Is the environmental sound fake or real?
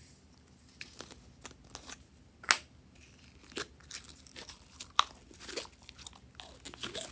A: real